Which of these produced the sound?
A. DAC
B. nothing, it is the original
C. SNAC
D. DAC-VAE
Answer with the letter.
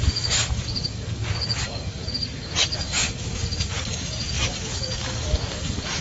A